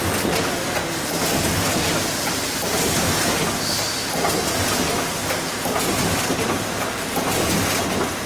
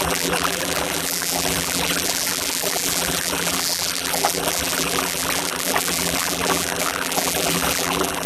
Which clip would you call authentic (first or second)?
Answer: first